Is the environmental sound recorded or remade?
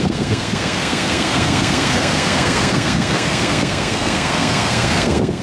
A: remade